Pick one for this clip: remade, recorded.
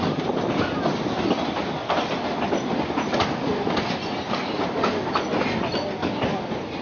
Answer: recorded